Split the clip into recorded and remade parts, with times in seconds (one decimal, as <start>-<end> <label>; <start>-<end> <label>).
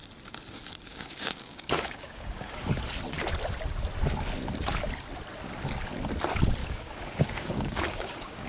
0.0-0.9 recorded; 0.9-2.8 remade; 2.8-6.6 recorded; 6.6-8.5 remade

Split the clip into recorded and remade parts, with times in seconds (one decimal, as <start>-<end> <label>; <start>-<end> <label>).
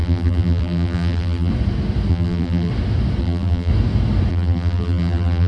0.0-1.5 remade; 1.5-2.1 recorded; 2.1-2.7 remade; 2.7-3.2 recorded; 3.2-3.7 remade; 3.7-4.3 recorded; 4.3-5.5 remade